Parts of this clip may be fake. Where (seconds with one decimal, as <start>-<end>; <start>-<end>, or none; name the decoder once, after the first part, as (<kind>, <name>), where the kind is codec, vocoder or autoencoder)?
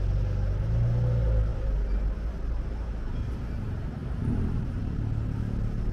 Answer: none